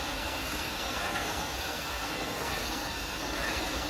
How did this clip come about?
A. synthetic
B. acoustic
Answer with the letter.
A